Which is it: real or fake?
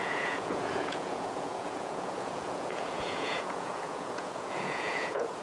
fake